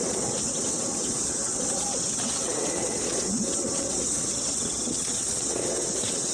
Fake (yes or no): yes